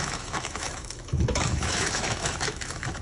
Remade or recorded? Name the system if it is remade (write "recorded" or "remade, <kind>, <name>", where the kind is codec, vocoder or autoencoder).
remade, autoencoder, DAC-VAE